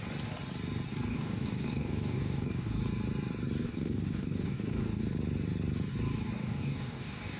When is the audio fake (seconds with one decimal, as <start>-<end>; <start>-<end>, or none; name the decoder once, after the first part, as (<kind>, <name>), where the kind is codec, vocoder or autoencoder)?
1.1-2.8 (codec, DAC); 3.6-5.0; 6.4-7.4